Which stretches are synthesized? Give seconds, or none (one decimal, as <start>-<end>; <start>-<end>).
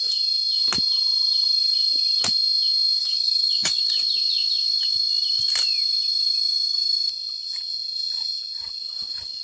3.0-3.8